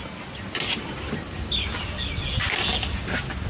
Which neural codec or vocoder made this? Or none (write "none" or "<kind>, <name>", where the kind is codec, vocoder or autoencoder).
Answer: none